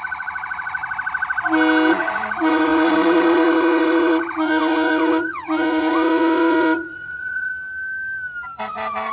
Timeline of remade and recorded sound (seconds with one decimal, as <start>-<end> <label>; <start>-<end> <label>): 0.0-0.8 remade; 0.8-1.9 recorded; 1.9-7.5 remade; 7.5-8.6 recorded; 8.6-9.1 remade